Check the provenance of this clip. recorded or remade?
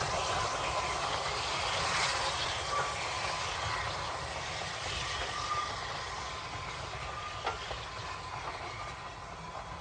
recorded